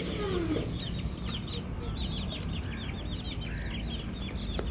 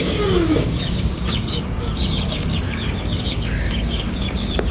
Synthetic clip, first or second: second